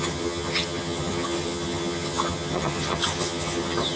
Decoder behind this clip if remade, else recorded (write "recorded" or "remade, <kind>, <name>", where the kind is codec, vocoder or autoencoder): remade, vocoder, HiFi-GAN